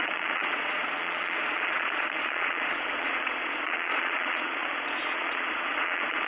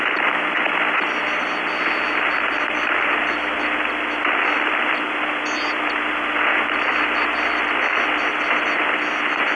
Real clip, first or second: second